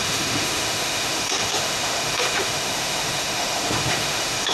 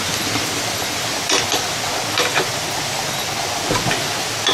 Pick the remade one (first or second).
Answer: first